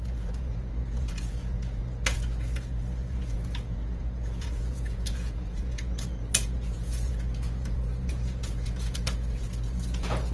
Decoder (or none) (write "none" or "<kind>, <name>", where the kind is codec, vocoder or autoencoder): vocoder, Vocos